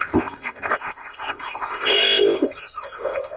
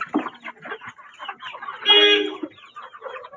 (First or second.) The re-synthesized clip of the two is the first